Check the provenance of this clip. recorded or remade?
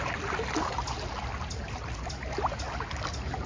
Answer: recorded